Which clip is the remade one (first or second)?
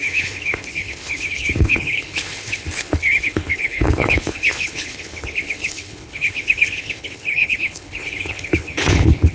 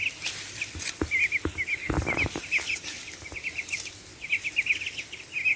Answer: first